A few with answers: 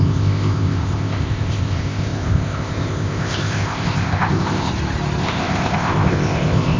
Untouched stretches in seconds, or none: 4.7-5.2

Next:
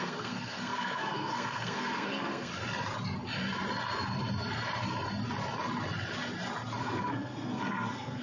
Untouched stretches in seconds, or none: 2.5-6.8